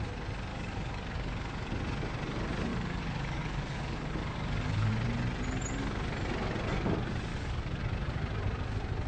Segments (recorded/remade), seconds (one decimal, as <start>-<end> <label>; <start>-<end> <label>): 0.0-0.5 recorded; 0.5-1.7 remade; 1.7-2.7 recorded; 2.7-4.9 remade; 4.9-7.3 recorded; 7.3-7.8 remade; 7.8-9.1 recorded